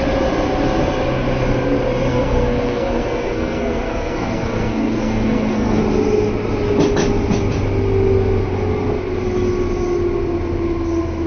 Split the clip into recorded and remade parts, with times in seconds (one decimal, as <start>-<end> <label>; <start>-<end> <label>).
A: 0.0-2.1 recorded; 2.1-5.8 remade; 5.8-11.3 recorded